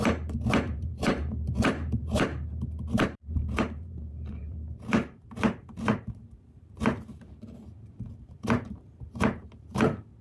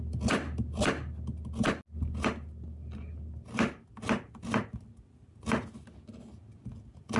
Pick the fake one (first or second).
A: first